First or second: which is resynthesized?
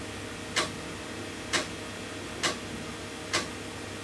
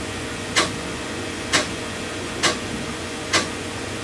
second